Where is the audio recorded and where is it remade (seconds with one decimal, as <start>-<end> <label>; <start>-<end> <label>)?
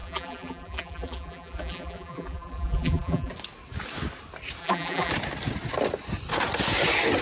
0.0-3.3 remade; 3.3-4.6 recorded; 4.6-5.1 remade; 5.1-7.2 recorded